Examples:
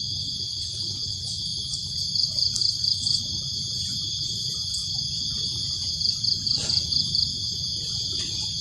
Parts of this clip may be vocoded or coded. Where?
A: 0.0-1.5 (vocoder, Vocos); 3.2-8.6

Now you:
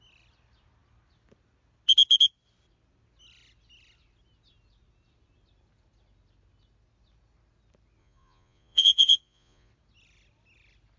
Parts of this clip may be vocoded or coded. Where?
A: 8.0-9.7 (vocoder, Vocos)

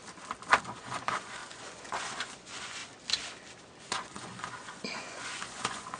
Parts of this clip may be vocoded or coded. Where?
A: 0.6-2.8 (vocoder, Vocos); 3.8-6.0

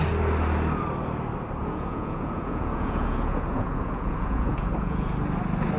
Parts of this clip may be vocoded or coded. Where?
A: 1.6-5.1 (vocoder, Vocos)